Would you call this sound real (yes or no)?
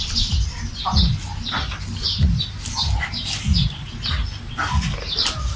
yes